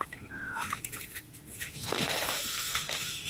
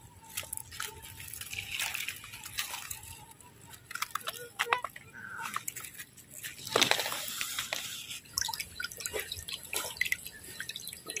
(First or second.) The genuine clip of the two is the second